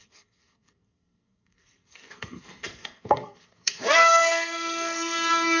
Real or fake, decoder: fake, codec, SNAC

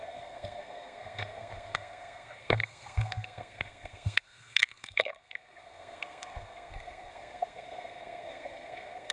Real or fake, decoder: fake, codec, SNAC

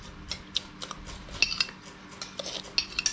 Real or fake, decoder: real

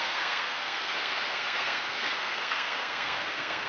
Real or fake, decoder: fake, codec, SNAC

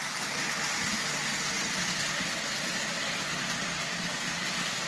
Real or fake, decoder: real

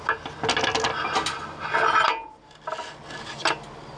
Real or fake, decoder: real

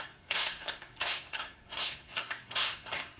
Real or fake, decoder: fake, codec, SNAC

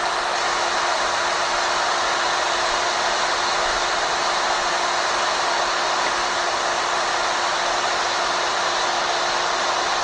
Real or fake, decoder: real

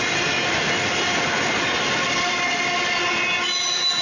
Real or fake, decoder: real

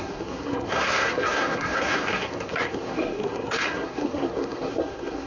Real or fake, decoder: fake, codec, SNAC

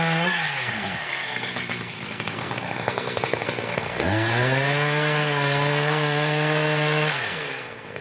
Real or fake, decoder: fake, codec, SNAC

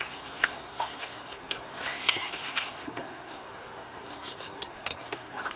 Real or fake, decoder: fake, codec, SNAC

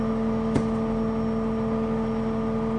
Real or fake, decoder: real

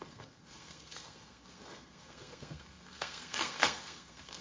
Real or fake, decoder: fake, codec, SNAC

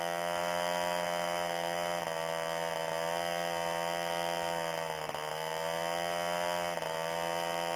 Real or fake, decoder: real